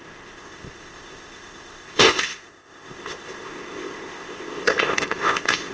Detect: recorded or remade remade